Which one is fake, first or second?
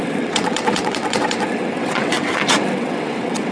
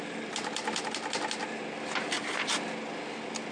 first